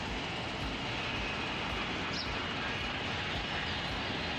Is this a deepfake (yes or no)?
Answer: no